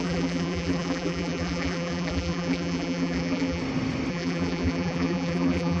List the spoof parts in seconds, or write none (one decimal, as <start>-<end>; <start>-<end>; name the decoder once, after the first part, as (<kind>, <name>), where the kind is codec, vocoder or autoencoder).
0.0-3.6 (vocoder, BigVGAN v2); 4.1-5.8